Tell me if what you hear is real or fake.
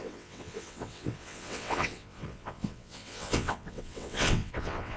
fake